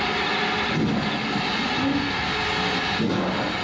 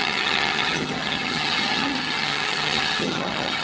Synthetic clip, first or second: second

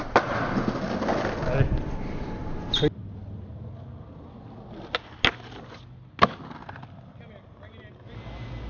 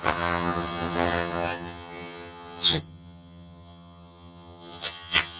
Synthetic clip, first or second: second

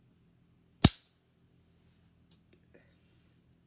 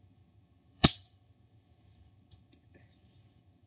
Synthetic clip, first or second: second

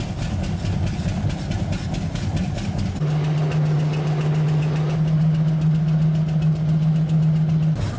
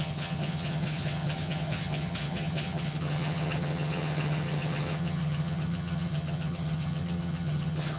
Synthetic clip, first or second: second